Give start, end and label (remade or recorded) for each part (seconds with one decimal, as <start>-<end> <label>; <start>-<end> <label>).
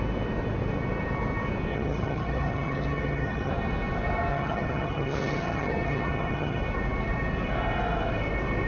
0.0-1.7 recorded; 1.7-3.5 remade; 3.5-4.3 recorded; 4.3-6.6 remade; 6.6-8.7 recorded